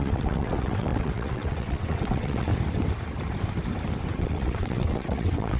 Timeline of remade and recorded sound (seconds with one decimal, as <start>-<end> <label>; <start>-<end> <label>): 0.0-2.5 remade; 2.5-4.2 recorded; 4.2-5.6 remade